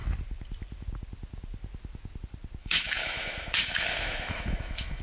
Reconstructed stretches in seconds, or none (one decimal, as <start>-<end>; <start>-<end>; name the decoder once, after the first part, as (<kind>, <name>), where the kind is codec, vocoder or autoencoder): 2.6-5.0 (autoencoder, DAC-VAE)